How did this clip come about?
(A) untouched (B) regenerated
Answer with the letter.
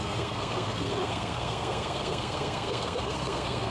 B